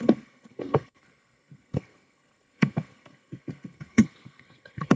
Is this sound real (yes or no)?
no